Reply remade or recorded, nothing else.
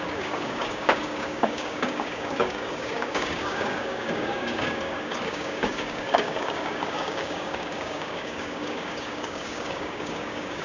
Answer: remade